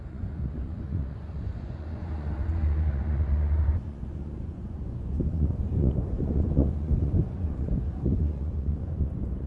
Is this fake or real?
fake